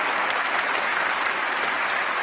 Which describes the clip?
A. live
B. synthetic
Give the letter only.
A